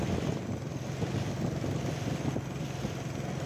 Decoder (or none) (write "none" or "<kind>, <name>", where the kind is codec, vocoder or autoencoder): none